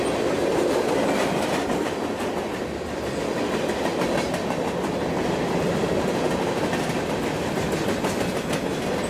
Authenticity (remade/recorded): recorded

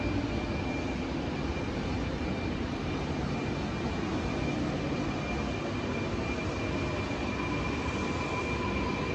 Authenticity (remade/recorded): recorded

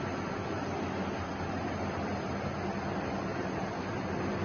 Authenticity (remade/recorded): recorded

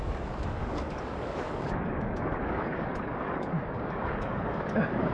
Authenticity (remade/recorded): remade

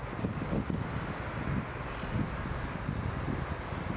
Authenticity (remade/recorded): recorded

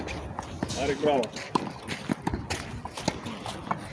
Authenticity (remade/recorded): recorded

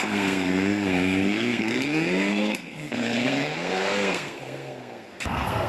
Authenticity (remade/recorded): remade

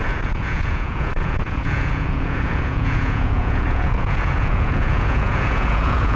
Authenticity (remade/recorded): remade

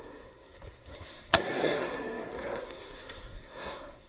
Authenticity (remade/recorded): remade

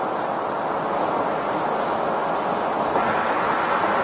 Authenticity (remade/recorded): recorded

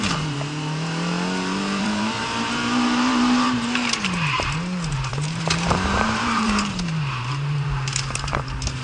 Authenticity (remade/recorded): remade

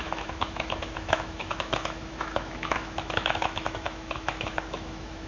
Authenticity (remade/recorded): remade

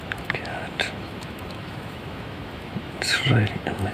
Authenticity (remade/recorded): remade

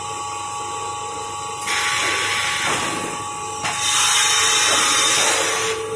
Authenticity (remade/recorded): recorded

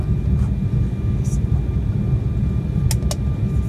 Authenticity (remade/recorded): recorded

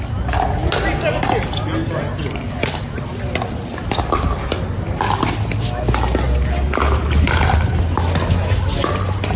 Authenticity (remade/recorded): recorded